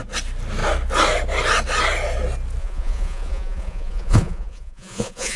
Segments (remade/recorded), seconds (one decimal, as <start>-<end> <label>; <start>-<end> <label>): 0.0-2.6 recorded; 2.6-5.4 remade